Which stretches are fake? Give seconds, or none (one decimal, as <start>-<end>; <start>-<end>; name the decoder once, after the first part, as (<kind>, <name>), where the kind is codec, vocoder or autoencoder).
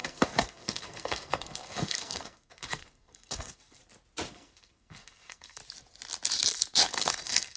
0.0-3.8 (codec, SNAC); 4.3-5.6; 6.5-7.6